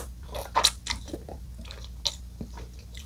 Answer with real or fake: real